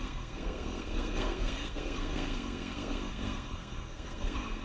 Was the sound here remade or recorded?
remade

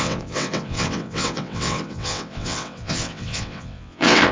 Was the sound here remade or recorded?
remade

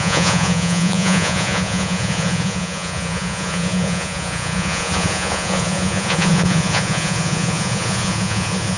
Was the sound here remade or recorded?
remade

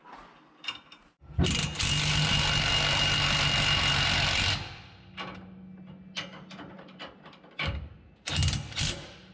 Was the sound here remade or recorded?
recorded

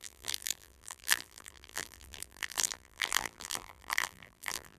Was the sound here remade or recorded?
remade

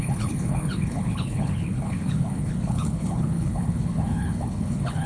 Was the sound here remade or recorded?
remade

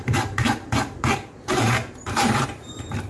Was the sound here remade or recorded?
remade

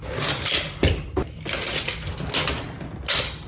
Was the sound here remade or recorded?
recorded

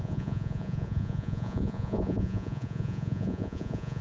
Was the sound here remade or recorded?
remade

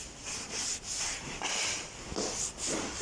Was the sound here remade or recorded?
recorded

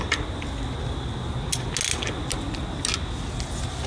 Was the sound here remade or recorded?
recorded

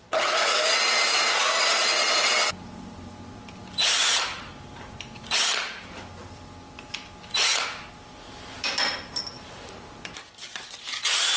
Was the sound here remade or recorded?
remade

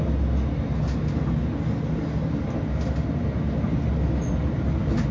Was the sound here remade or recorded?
recorded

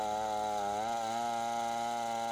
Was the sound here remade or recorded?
recorded